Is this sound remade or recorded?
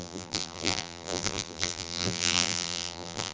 remade